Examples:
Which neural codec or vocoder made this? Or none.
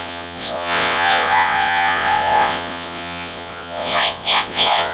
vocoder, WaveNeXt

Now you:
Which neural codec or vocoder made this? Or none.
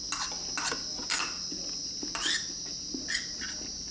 none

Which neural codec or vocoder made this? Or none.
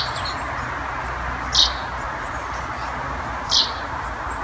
none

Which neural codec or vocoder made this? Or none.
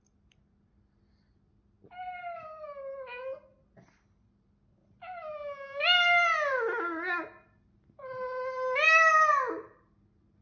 none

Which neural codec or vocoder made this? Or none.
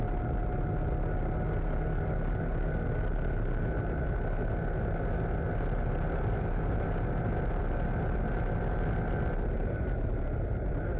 none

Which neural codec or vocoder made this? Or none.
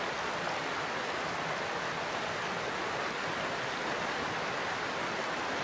none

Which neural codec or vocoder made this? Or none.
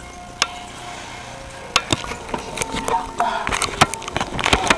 none